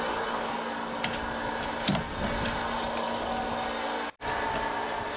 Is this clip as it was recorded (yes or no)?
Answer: yes